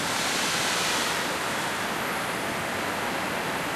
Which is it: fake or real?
real